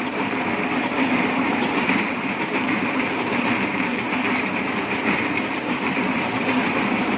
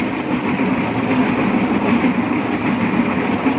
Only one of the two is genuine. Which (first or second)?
second